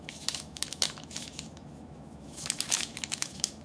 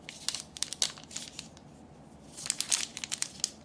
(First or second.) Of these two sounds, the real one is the second